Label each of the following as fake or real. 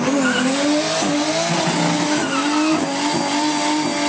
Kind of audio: real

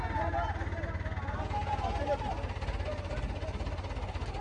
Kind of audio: real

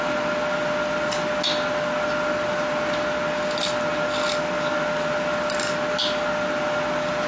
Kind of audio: real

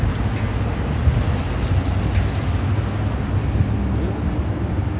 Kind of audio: real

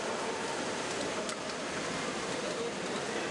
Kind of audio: real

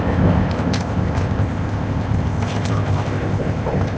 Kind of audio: fake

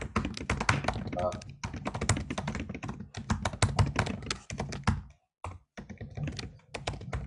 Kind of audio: real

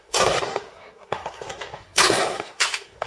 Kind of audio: fake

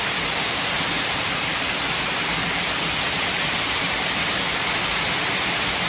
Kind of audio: real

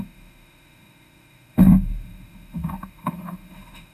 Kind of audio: fake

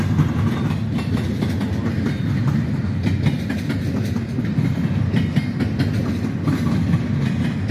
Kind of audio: real